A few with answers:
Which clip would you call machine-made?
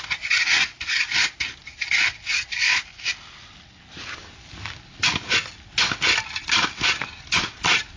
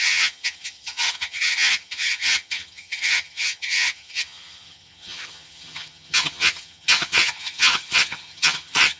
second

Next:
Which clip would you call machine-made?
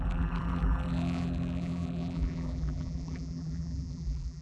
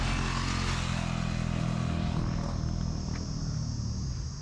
first